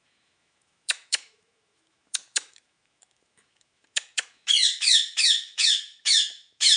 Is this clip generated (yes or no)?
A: yes